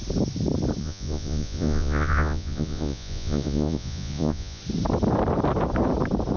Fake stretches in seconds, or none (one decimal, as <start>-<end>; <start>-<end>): 0.8-4.6